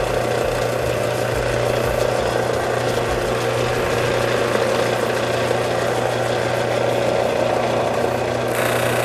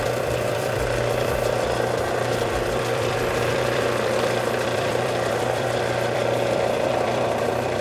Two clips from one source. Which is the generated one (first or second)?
second